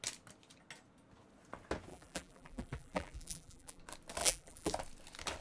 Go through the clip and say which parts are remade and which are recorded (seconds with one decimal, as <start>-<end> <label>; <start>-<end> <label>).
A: 0.0-1.9 recorded; 1.9-3.8 remade; 3.8-4.2 recorded; 4.2-4.7 remade; 4.7-5.4 recorded